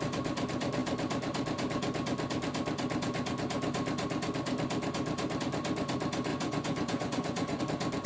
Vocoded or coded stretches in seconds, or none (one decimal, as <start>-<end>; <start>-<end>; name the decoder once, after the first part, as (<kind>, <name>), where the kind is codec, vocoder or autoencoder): 6.3-7.6 (vocoder, Vocos)